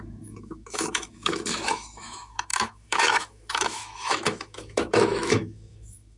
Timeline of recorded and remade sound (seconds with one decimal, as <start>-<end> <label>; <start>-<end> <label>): 0.0-6.2 remade